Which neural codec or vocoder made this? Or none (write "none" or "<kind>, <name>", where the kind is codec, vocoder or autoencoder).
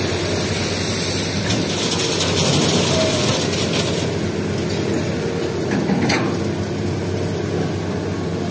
none